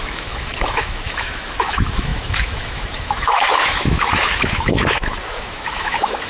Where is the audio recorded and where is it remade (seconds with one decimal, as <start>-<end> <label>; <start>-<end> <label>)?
0.0-6.3 remade